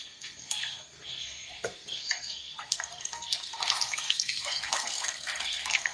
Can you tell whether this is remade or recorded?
remade